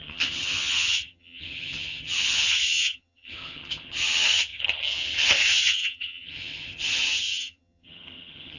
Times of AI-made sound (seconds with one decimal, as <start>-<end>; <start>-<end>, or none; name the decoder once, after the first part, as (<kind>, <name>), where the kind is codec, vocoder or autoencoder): 0.0-8.6 (vocoder, HiFi-GAN)